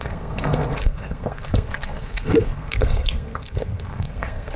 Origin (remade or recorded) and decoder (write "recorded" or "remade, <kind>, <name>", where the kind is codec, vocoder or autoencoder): remade, codec, SNAC